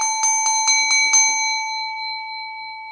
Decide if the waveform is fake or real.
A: real